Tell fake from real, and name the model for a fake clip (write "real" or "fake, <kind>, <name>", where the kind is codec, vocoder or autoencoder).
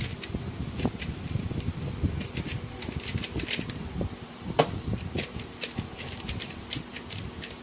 real